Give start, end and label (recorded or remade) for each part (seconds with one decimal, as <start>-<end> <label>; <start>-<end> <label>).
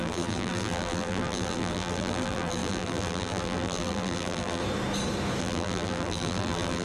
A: 0.0-4.6 remade; 4.6-5.4 recorded; 5.4-6.8 remade